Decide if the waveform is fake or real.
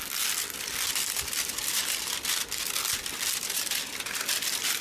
real